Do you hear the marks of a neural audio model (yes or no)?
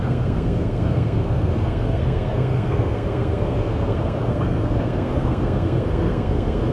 yes